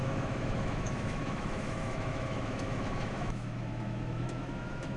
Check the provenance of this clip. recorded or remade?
remade